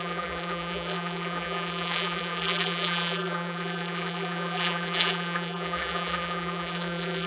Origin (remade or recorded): remade